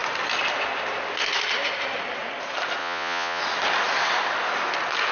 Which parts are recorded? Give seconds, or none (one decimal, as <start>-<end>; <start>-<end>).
0.0-2.8; 3.4-5.1